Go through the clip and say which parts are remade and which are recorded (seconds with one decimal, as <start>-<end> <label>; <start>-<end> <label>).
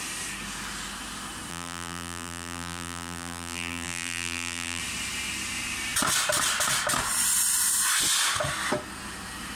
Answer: 0.0-1.5 recorded; 1.5-4.8 remade; 4.8-9.6 recorded